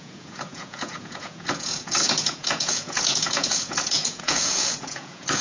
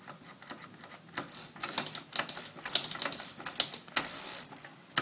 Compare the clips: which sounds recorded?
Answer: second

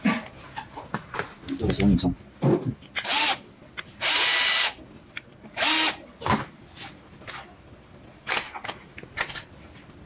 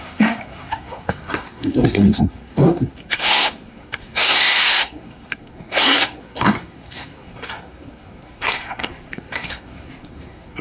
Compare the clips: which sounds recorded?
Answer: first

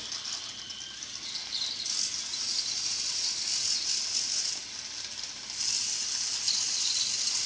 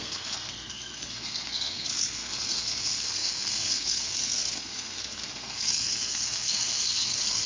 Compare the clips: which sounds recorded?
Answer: first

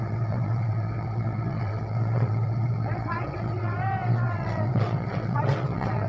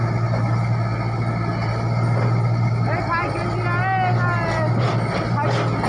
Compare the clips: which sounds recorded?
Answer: second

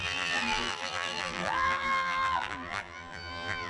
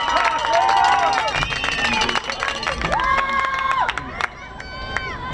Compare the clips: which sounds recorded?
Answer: second